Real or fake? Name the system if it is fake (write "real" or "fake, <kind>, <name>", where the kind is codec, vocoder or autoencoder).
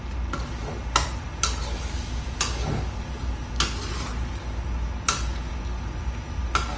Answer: real